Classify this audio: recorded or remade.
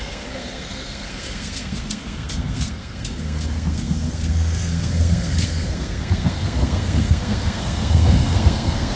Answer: remade